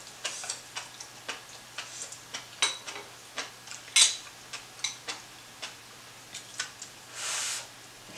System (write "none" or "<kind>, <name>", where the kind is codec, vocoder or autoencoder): none